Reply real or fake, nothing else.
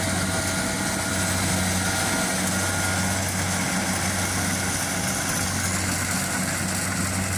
real